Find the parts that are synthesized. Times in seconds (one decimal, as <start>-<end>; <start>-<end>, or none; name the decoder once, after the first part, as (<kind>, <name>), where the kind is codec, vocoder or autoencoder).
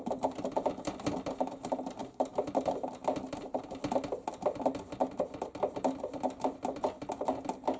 none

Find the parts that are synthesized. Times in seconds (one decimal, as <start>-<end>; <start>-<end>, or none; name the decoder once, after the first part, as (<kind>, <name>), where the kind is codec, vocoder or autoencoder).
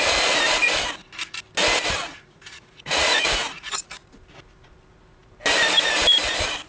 2.1-4.1 (vocoder, Vocos)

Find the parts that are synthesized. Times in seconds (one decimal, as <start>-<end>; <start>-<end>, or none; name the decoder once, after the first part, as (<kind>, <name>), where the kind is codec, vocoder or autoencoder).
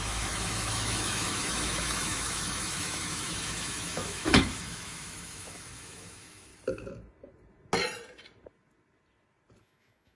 0.0-6.5 (autoencoder, DAC-VAE); 9.6-10.2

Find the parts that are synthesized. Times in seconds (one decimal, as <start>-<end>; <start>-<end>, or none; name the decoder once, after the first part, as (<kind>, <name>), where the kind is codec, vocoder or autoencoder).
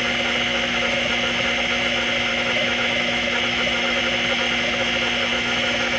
0.5-1.1 (autoencoder, DAC-VAE); 2.3-4.0; 5.3-6.0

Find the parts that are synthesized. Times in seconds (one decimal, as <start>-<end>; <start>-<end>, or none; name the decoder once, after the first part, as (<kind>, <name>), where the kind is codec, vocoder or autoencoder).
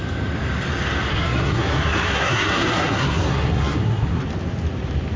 1.1-4.2 (codec, SNAC)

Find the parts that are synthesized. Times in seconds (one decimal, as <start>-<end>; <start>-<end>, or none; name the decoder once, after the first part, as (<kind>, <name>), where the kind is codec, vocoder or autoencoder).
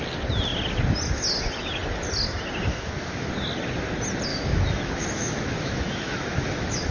2.7-3.3 (autoencoder, DAC-VAE); 4.3-6.9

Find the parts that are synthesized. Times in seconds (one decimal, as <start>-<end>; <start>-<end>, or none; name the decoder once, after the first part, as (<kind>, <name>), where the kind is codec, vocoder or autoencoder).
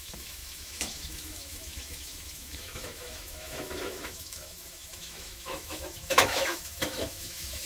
0.0-7.7 (autoencoder, DAC-VAE)